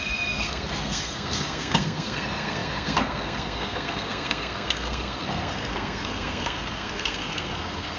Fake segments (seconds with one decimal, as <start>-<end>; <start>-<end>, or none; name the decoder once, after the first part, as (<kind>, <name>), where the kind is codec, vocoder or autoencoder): 0.0-8.0 (codec, SNAC)